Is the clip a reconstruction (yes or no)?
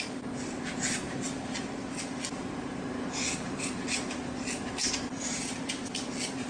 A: no